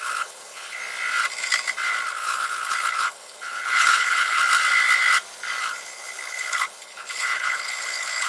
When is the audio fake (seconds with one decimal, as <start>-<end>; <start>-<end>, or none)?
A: 0.0-0.8; 2.1-4.4; 5.6-8.3